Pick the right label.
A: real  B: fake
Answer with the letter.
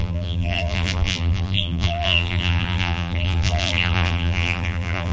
B